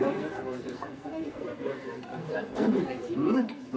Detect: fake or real fake